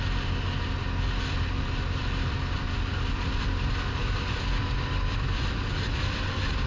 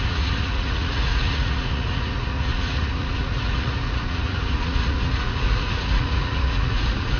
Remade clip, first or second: second